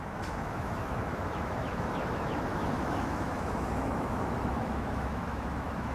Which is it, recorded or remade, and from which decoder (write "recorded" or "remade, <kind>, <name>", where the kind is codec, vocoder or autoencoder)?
remade, autoencoder, DAC-VAE